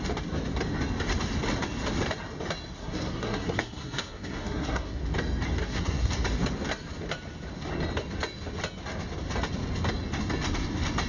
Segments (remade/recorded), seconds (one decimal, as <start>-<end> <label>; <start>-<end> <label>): 0.0-2.8 recorded; 2.8-5.0 remade; 5.0-5.6 recorded; 5.6-6.1 remade; 6.1-11.1 recorded